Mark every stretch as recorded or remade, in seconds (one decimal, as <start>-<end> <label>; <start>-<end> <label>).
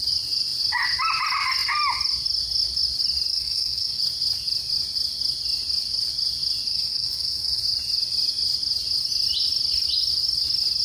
0.0-3.3 recorded; 3.3-4.0 remade; 4.0-6.7 recorded; 6.7-7.6 remade; 7.6-10.8 recorded